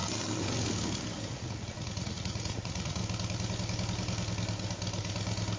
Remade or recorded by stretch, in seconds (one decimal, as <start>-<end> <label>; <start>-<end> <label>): 0.0-1.3 recorded; 1.3-3.0 remade; 3.0-5.6 recorded